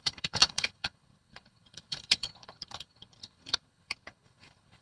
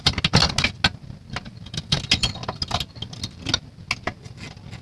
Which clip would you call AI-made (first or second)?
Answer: first